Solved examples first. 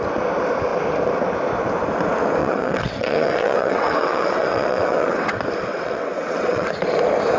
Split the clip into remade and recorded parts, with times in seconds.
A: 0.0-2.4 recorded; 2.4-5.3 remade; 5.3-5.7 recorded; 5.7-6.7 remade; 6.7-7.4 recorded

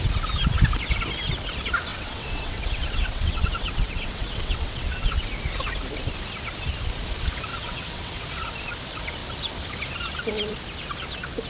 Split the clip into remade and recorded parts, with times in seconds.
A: 0.0-1.9 recorded; 1.9-5.3 remade; 5.3-7.5 recorded; 7.5-8.2 remade; 8.2-11.5 recorded

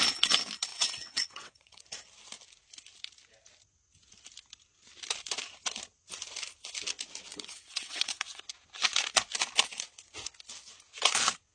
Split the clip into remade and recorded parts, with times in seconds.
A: 0.0-0.7 recorded; 0.7-1.8 remade; 1.8-7.3 recorded; 7.3-8.4 remade; 8.4-11.5 recorded

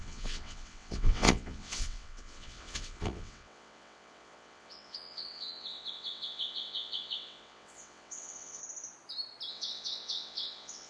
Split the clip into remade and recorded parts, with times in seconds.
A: 0.0-8.6 remade; 8.6-9.5 recorded; 9.5-10.9 remade

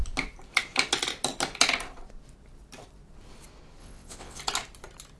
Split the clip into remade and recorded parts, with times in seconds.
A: 0.0-3.8 recorded; 3.8-4.4 remade; 4.4-5.2 recorded